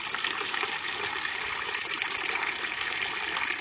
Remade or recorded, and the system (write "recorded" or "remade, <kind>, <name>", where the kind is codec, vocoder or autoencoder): remade, vocoder, BigVGAN v2